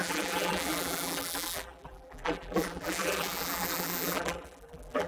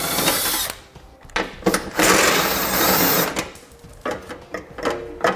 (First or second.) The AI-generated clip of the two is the first